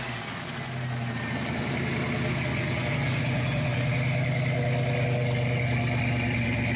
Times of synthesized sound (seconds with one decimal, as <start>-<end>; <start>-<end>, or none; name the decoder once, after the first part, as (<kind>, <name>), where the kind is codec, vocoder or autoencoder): 2.5-3.9 (vocoder, Vocos)